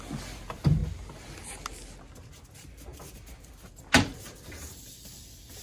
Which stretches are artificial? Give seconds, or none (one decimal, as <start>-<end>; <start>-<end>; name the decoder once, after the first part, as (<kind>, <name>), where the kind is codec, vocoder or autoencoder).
0.0-0.8 (vocoder, BigVGAN v2); 4.2-5.6